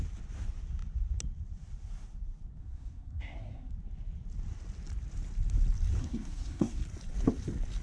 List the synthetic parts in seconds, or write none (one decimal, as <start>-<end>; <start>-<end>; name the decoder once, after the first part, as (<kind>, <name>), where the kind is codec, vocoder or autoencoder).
2.6-3.7 (codec, SNAC); 6.0-6.8